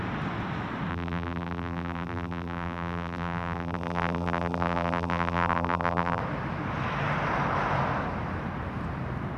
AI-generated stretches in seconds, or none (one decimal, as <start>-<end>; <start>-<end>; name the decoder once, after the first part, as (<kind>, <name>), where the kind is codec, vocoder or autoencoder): 0.9-6.2 (vocoder, BigVGAN v2)